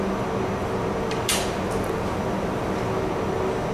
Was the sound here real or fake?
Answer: real